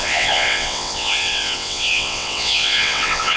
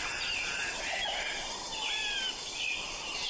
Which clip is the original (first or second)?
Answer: second